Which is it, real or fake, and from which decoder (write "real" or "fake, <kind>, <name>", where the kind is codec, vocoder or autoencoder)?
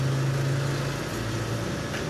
real